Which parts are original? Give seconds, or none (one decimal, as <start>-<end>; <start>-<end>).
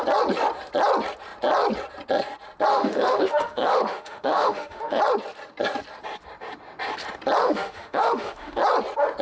0.0-2.7; 5.0-7.4; 8.6-9.2